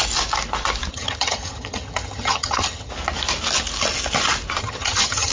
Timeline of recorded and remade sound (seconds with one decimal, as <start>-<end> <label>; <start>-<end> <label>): 0.0-0.9 recorded; 0.9-2.9 remade; 2.9-4.6 recorded; 4.6-5.3 remade